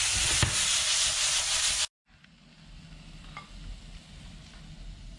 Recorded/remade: recorded